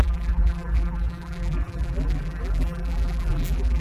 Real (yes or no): no